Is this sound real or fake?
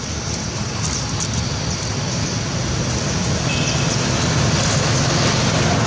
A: real